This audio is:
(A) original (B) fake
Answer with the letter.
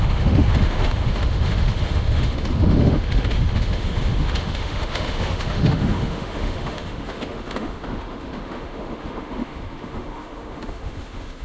B